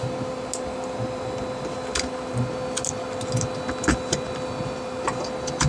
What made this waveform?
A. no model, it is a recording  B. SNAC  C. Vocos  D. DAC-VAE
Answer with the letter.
A